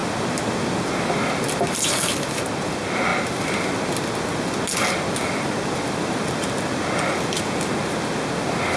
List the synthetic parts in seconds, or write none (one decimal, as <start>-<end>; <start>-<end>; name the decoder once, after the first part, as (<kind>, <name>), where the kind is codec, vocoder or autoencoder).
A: none